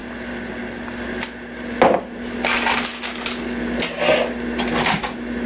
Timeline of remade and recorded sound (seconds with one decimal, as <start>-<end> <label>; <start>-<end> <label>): 0.0-5.5 recorded